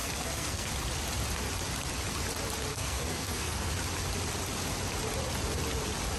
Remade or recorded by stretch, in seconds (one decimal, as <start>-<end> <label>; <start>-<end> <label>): 0.0-0.7 remade; 0.7-2.7 recorded; 2.7-3.7 remade; 3.7-6.2 recorded